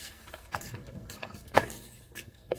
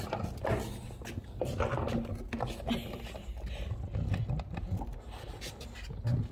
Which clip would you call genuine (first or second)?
second